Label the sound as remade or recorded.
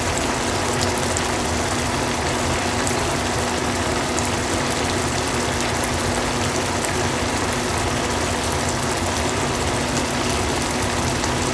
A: recorded